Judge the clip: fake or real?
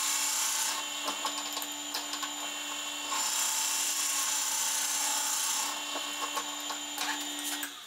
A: real